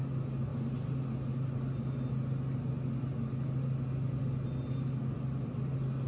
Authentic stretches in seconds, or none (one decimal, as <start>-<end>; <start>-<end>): 0.0-6.1

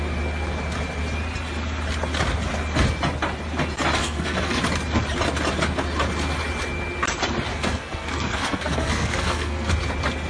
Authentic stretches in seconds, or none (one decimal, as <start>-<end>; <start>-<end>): 0.0-4.0; 4.6-7.5; 9.7-10.3